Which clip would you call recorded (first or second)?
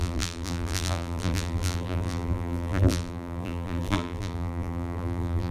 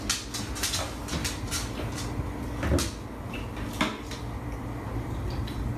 second